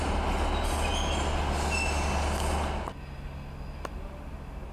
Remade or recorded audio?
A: recorded